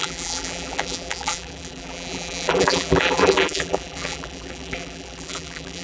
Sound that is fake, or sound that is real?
fake